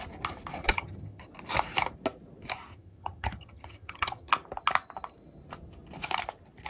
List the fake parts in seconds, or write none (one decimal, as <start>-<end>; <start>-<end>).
0.6-1.3; 2.7-4.3